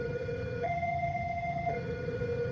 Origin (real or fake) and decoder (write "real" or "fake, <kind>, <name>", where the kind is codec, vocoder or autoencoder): fake, vocoder, HiFi-GAN